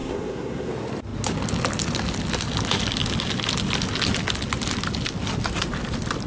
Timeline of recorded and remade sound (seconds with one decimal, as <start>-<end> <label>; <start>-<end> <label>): 0.0-0.7 remade; 0.7-6.3 recorded